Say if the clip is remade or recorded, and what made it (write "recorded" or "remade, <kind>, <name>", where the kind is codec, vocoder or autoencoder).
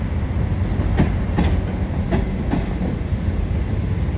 recorded